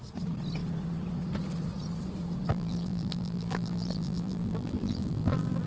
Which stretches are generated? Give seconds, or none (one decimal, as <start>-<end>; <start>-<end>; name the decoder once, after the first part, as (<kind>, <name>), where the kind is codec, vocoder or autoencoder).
2.5-5.7 (vocoder, BigVGAN v2)